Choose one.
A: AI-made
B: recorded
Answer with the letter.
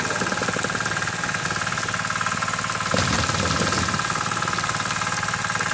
B